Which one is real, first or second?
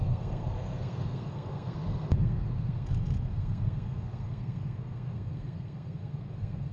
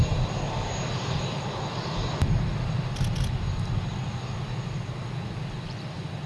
second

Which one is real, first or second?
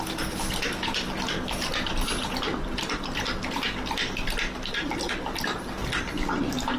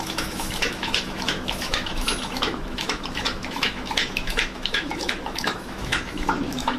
first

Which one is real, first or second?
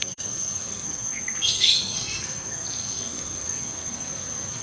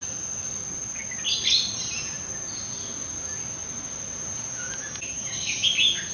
second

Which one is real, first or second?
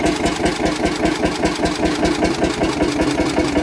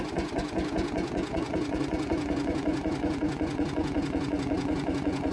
first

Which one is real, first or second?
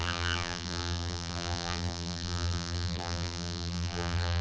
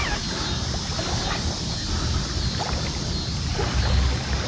second